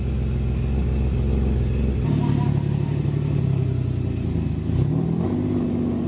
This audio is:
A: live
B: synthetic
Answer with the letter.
A